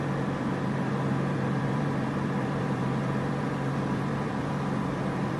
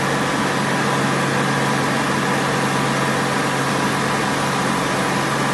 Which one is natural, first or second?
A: second